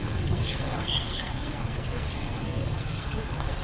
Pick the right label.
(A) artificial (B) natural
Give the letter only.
A